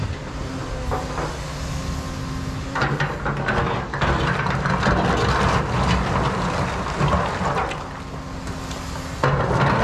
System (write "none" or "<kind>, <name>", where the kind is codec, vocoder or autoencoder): none